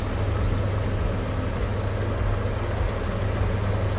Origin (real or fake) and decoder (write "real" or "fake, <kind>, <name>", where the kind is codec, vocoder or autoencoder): real